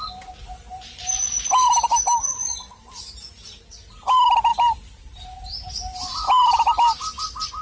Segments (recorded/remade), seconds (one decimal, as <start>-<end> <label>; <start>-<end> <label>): 0.0-7.6 recorded